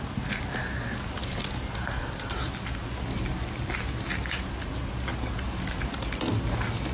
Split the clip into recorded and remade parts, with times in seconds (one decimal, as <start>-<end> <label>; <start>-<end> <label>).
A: 0.0-6.9 recorded